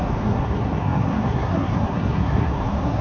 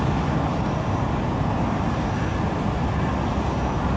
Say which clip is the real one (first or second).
second